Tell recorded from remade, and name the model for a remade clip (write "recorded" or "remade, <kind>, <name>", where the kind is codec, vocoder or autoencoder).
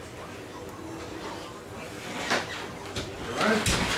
recorded